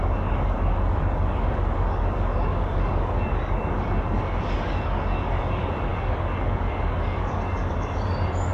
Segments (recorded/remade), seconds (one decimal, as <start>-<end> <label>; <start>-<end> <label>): 0.0-8.5 remade